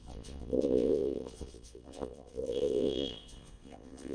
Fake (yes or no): yes